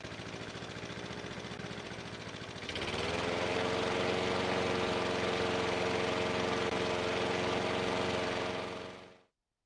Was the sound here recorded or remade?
recorded